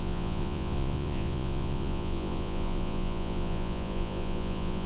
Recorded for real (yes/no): no